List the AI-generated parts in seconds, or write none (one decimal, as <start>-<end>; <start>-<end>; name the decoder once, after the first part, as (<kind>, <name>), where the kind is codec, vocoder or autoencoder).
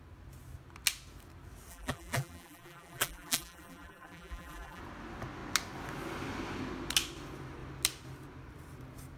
1.7-4.8 (vocoder, BigVGAN v2)